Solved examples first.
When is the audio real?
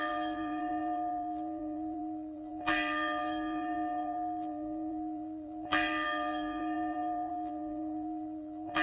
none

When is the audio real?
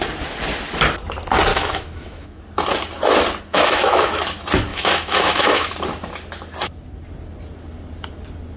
0.0-1.5; 2.4-3.5; 4.2-4.7; 5.7-8.6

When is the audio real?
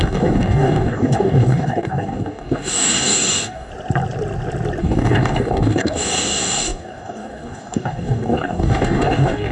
3.7-4.8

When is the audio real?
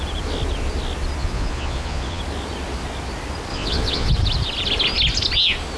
0.0-1.2; 2.2-3.5; 4.1-5.8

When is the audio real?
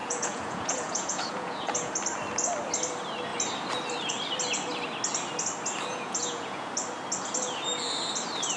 1.9-5.9; 6.7-8.6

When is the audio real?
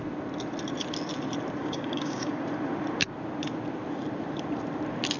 0.0-1.6; 2.3-5.2